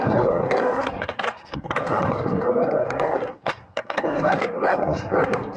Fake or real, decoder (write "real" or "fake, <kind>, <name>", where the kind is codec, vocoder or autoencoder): fake, codec, SNAC